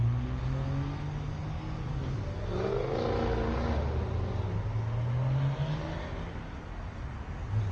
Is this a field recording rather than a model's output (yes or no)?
yes